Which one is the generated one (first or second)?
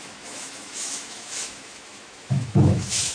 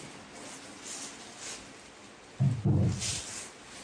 first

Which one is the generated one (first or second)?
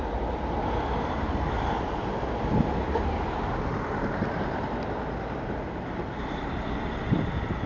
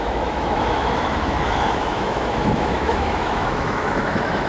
second